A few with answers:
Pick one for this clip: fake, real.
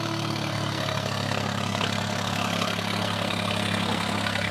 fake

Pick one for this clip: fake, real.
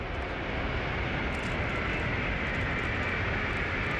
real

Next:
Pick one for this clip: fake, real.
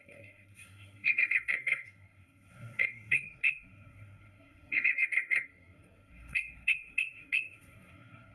fake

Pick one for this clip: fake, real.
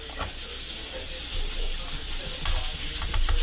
real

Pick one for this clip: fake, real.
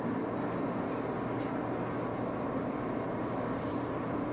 real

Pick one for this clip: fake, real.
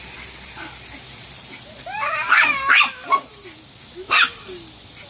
real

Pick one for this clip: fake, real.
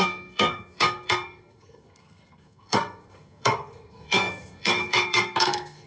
fake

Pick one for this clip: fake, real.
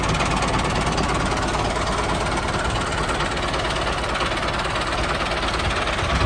real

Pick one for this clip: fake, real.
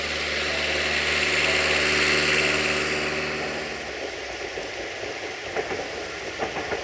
real